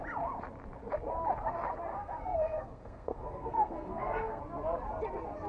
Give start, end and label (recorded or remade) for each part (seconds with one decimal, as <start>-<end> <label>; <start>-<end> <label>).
0.0-1.9 recorded; 1.9-4.4 remade; 4.4-5.5 recorded